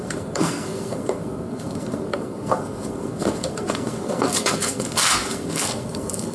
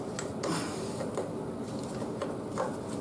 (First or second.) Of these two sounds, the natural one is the second